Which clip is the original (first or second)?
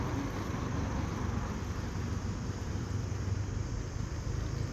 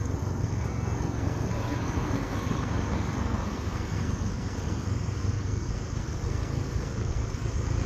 first